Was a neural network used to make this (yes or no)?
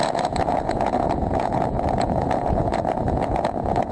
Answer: yes